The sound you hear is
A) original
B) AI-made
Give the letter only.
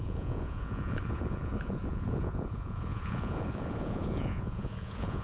B